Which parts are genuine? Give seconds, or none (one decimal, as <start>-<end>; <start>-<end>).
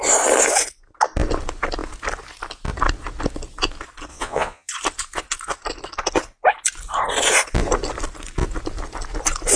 0.0-4.1; 4.7-9.6